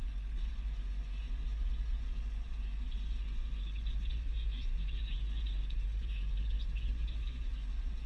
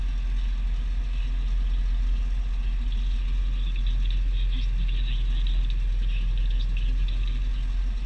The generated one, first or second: first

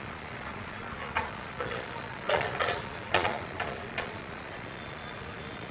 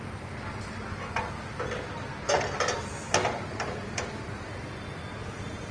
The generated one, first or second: first